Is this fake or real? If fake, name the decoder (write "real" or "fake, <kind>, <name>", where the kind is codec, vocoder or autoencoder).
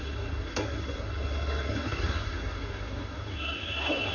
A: fake, codec, SNAC